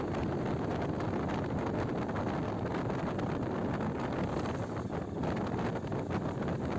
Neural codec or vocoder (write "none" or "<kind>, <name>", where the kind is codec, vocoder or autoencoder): none